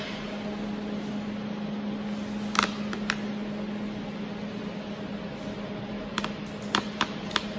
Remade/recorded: recorded